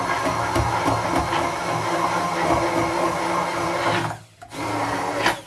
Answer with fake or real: real